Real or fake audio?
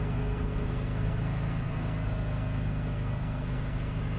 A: fake